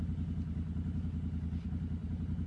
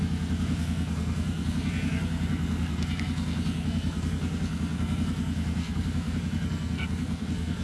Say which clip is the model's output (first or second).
second